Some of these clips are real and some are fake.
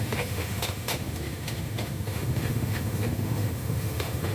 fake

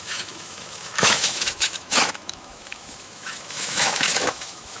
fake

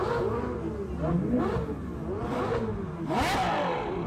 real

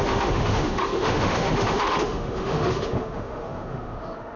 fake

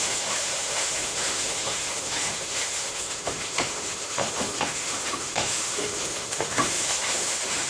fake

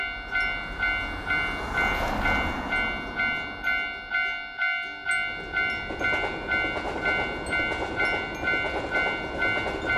real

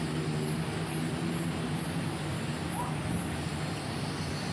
real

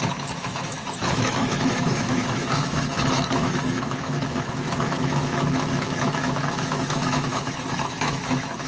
fake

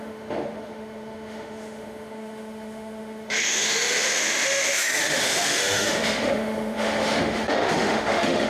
fake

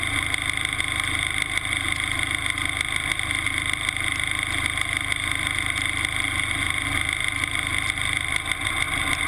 real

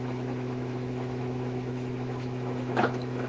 fake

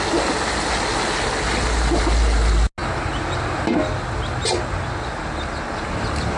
real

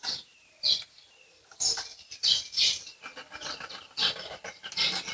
real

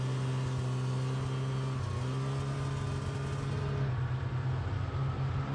real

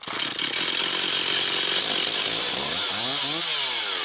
real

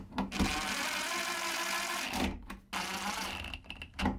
real